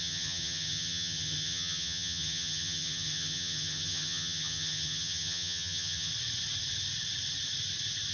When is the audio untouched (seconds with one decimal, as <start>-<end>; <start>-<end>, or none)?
6.1-8.1